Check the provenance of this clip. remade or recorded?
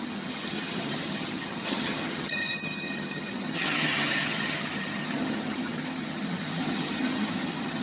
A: remade